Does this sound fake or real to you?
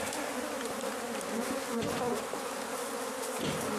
real